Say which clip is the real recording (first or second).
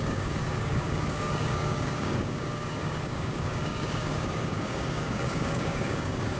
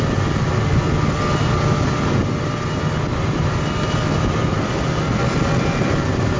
second